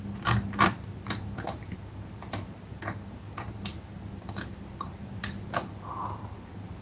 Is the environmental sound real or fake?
real